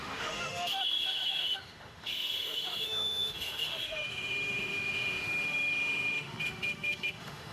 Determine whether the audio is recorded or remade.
remade